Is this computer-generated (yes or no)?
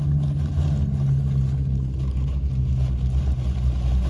no